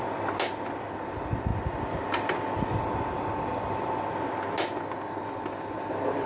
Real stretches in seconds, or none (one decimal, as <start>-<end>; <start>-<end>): 0.0-6.3